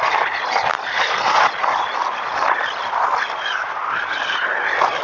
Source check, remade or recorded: recorded